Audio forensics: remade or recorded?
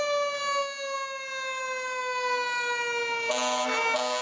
recorded